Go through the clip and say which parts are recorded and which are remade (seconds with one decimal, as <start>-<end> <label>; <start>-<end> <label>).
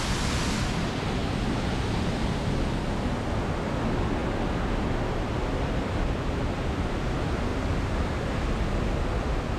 0.0-9.6 recorded